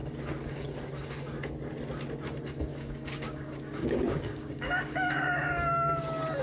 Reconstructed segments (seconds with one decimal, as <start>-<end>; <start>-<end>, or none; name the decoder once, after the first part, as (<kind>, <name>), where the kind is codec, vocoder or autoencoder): 2.7-6.0 (codec, DAC)